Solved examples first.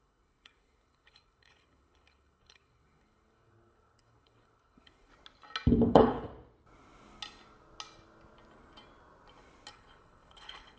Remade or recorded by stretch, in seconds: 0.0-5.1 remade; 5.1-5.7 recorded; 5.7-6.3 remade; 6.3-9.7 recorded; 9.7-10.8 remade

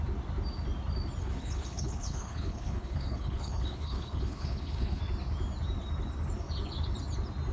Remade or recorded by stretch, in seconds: 0.0-1.2 recorded; 1.2-5.0 remade; 5.0-7.5 recorded

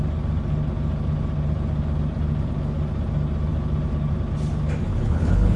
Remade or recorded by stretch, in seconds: 0.0-4.9 recorded; 4.9-5.6 remade

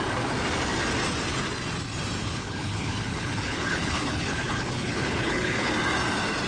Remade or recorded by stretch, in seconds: 0.0-2.2 recorded; 2.2-5.7 remade; 5.7-6.5 recorded

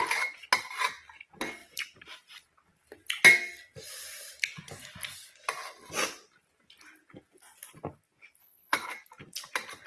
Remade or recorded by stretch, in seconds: 0.0-8.4 recorded; 8.4-8.9 remade; 8.9-9.9 recorded